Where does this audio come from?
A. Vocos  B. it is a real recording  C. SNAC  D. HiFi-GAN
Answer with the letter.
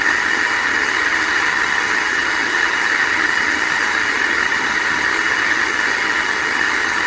D